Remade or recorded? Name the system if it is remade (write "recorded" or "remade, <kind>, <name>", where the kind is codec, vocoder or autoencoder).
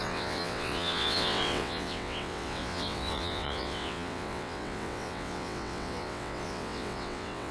remade, vocoder, WaveNeXt